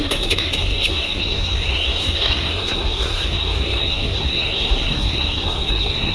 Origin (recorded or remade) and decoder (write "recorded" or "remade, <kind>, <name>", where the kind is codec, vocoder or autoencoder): remade, codec, SNAC